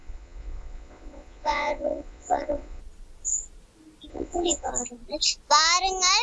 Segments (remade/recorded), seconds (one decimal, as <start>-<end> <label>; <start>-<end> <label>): 0.0-2.8 remade; 2.8-4.1 recorded; 4.1-4.7 remade; 4.7-6.2 recorded